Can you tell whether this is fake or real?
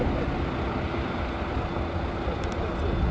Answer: real